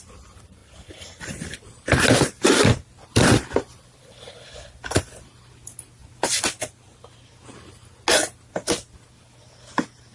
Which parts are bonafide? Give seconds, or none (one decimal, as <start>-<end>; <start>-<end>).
0.0-0.6; 5.5-10.1